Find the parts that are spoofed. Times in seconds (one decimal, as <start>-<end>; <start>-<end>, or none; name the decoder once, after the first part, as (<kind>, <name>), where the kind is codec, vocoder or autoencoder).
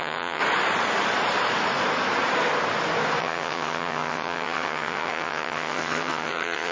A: 0.0-0.4 (vocoder, HiFi-GAN); 3.2-6.7